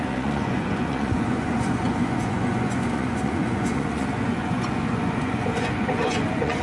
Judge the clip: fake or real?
fake